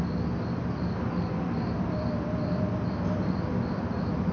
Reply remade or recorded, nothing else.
recorded